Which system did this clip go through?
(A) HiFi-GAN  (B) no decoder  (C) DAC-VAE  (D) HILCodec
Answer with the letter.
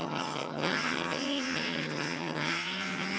A